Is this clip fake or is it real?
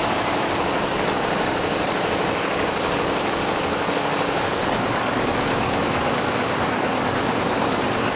fake